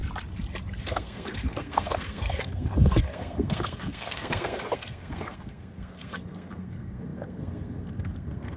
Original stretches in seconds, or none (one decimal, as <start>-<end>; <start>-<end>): 0.0-0.8